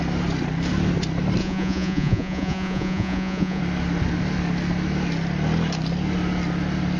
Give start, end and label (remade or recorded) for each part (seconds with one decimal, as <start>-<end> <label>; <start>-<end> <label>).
0.0-1.4 recorded; 1.4-3.6 remade; 3.6-7.0 recorded